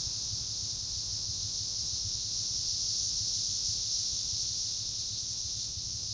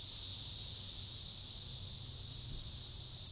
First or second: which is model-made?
first